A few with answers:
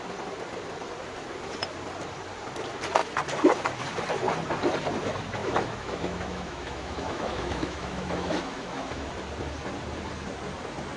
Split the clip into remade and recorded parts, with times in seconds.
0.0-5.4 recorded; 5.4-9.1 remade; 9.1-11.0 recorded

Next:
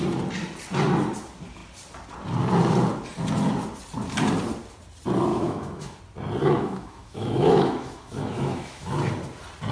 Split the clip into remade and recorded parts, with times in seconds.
0.0-5.3 recorded; 5.3-6.0 remade; 6.0-6.4 recorded; 6.4-9.0 remade; 9.0-9.7 recorded

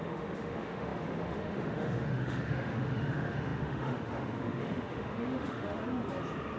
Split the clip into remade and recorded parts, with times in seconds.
0.0-5.8 remade; 5.8-6.6 recorded

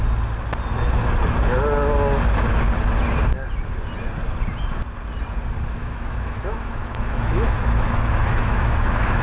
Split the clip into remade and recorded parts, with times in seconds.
0.0-5.8 recorded; 5.8-9.2 remade

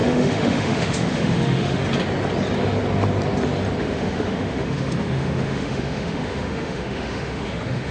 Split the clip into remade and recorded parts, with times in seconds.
0.0-1.8 remade; 1.8-3.8 recorded; 3.8-7.9 remade

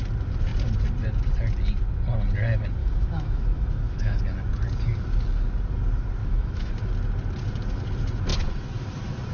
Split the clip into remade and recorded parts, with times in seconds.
0.0-2.8 recorded; 2.8-4.2 remade; 4.2-6.2 recorded; 6.2-6.7 remade; 6.7-9.3 recorded

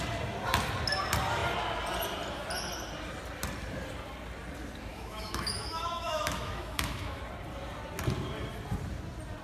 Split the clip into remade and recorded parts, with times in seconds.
0.0-4.9 recorded; 4.9-7.2 remade; 7.2-9.4 recorded

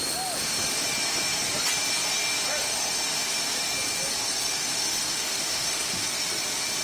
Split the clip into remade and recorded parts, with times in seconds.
0.0-4.7 recorded; 4.7-6.0 remade; 6.0-6.8 recorded